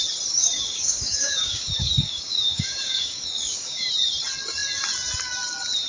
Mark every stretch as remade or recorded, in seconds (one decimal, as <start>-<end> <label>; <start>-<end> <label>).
0.0-0.4 recorded; 0.4-3.9 remade; 3.9-5.9 recorded